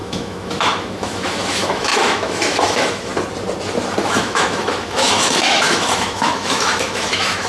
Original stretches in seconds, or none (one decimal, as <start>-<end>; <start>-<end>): 3.1-4.0